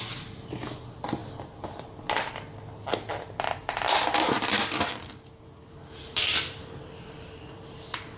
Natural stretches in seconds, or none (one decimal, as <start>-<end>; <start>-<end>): 0.0-8.2